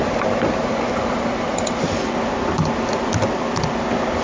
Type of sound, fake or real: fake